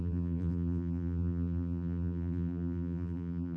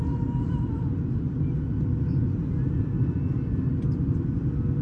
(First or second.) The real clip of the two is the second